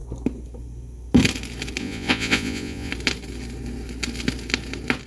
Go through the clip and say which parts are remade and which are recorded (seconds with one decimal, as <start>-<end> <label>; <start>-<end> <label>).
0.0-1.8 recorded; 1.8-2.9 remade; 2.9-5.1 recorded